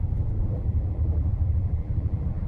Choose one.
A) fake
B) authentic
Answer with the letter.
A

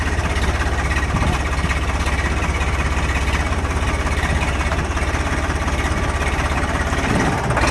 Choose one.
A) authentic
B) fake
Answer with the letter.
A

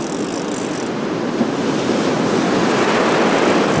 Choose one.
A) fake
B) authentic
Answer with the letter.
B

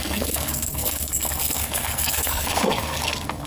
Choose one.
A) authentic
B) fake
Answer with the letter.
B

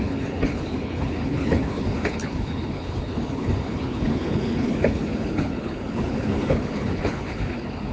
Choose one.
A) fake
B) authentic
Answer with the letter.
A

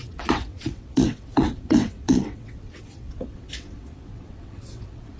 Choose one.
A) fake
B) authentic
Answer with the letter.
A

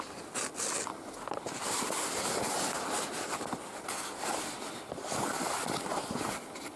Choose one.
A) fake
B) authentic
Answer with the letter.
B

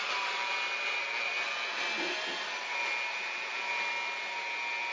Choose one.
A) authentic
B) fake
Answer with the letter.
A